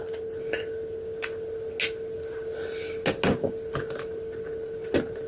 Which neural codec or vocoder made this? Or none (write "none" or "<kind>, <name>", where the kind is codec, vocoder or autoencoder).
none